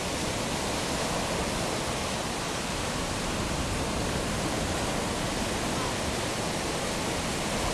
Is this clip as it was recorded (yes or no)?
yes